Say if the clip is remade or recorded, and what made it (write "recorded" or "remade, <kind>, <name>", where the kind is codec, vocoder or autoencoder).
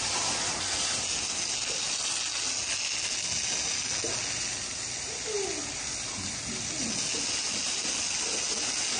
recorded